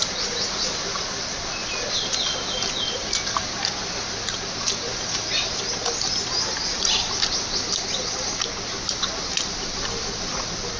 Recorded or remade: recorded